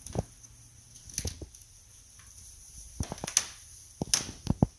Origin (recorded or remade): recorded